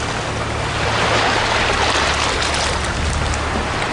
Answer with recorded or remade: recorded